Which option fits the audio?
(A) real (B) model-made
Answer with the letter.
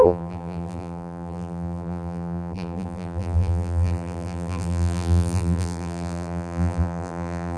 B